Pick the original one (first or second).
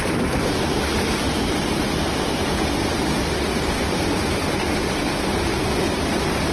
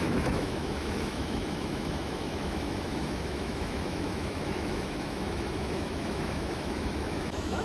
first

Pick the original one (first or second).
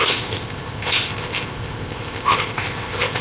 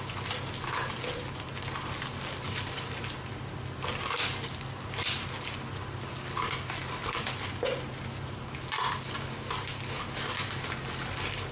second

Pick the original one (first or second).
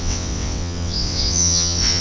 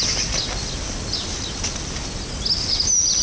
second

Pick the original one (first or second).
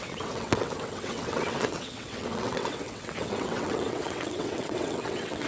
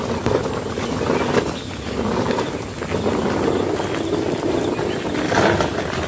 second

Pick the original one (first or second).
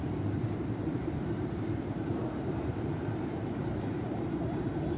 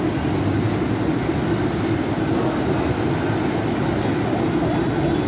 second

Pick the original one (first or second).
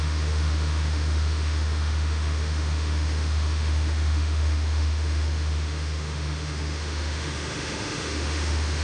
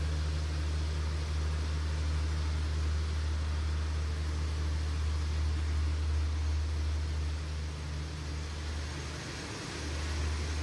second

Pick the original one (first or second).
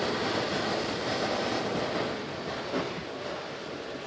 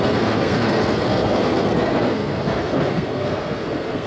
first